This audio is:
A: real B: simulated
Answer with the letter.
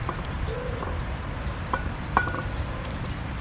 B